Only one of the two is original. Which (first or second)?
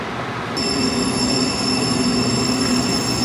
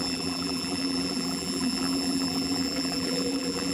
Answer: first